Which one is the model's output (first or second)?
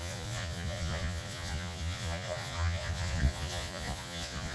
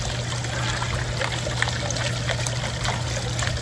first